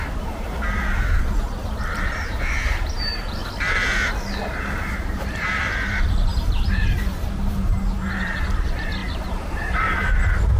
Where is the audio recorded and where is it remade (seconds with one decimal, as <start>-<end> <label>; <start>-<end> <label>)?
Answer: 0.0-3.4 remade; 3.4-4.7 recorded; 4.7-7.7 remade; 7.7-8.2 recorded; 8.2-10.6 remade